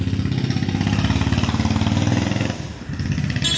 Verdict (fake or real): real